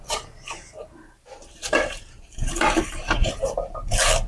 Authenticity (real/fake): fake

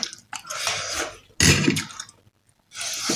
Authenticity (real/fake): real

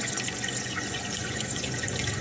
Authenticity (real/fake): fake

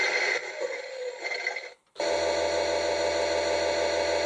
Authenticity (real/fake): real